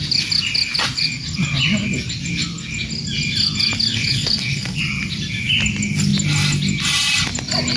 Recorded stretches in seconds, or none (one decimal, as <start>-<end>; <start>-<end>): 0.0-3.9; 4.8-7.8